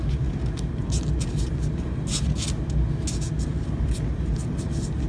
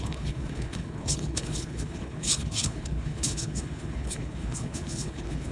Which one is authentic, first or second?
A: first